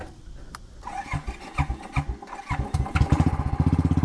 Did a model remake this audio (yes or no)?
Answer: no